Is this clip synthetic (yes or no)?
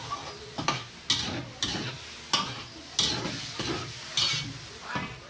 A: no